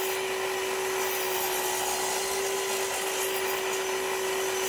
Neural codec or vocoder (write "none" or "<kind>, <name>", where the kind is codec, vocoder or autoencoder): none